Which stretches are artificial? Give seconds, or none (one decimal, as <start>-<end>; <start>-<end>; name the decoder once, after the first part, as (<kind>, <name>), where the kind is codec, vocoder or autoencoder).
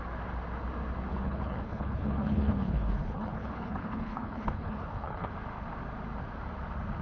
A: 1.1-5.3 (codec, HILCodec)